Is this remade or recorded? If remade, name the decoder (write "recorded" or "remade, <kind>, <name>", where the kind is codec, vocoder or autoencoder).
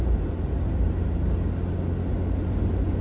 recorded